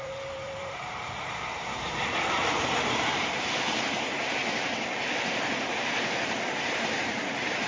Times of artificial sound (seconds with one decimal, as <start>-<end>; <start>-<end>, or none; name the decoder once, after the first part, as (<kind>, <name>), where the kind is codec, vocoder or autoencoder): 0.0-4.4 (vocoder, BigVGAN v2); 5.6-7.7